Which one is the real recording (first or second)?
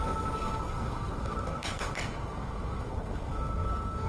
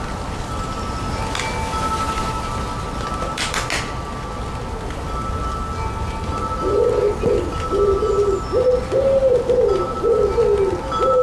second